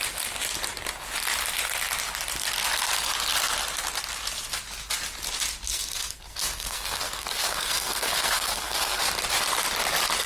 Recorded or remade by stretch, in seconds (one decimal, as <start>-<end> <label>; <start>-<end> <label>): 0.0-5.7 recorded; 5.7-9.0 remade; 9.0-10.3 recorded